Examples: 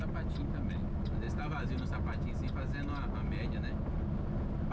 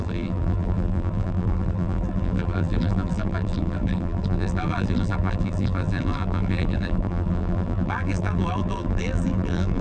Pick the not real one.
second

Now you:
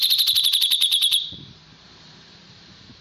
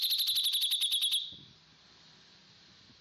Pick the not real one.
first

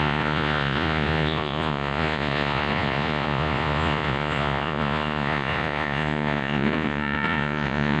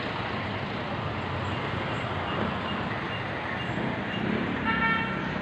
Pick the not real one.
first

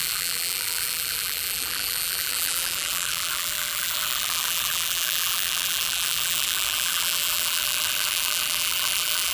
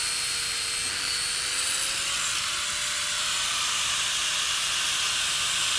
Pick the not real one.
first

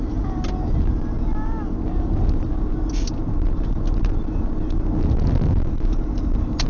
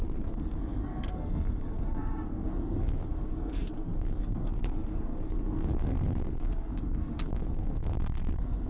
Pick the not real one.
second